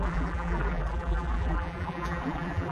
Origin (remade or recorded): remade